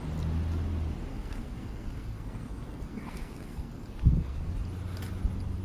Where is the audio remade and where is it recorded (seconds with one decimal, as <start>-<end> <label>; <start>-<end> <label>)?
0.0-1.1 recorded; 1.1-4.5 remade; 4.5-5.6 recorded